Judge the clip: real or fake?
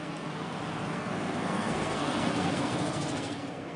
fake